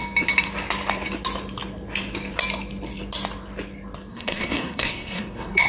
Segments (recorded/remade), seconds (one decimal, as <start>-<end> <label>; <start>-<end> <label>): 0.0-4.1 recorded; 4.1-5.7 remade